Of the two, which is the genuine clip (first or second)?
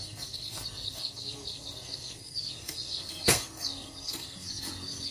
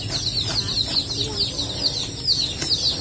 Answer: second